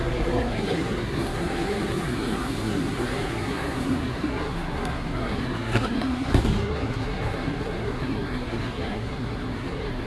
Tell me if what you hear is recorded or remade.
remade